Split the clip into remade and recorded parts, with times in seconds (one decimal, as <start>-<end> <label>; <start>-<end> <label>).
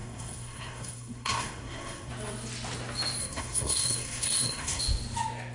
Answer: 0.0-2.1 remade; 2.1-3.2 recorded; 3.2-4.8 remade; 4.8-5.5 recorded